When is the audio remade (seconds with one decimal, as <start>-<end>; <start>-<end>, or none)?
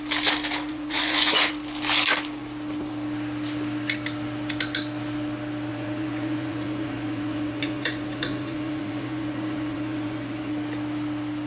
0.7-1.5; 5.7-10.5